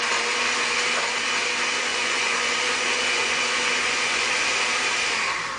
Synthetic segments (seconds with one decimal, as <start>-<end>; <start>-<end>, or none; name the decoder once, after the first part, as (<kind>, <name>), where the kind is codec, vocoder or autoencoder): 1.9-4.4 (vocoder, Vocos)